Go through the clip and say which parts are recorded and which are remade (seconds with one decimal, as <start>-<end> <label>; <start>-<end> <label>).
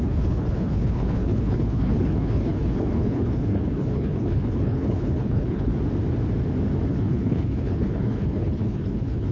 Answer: 0.0-5.7 remade; 5.7-6.9 recorded; 6.9-9.3 remade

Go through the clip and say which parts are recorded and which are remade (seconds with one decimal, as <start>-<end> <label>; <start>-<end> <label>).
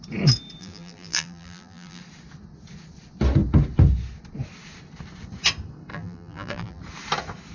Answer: 0.0-0.6 recorded; 0.6-2.0 remade; 2.0-5.9 recorded; 5.9-6.8 remade; 6.8-7.5 recorded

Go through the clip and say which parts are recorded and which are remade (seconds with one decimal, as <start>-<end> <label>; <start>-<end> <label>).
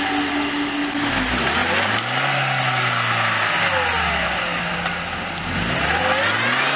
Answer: 0.0-6.8 recorded